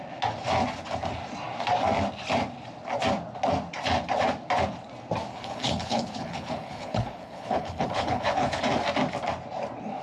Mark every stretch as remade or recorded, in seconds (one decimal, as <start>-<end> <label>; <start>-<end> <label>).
0.0-5.3 recorded; 5.3-8.6 remade; 8.6-10.0 recorded